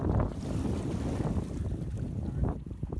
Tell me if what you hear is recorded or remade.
recorded